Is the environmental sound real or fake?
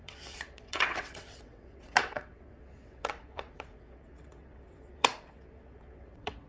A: fake